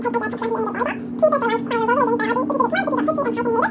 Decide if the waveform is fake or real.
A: real